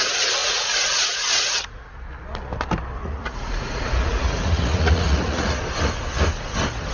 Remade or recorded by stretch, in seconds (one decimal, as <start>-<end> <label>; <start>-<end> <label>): 0.0-0.4 recorded; 0.4-1.8 remade; 1.8-3.0 recorded; 3.0-5.6 remade; 5.6-6.9 recorded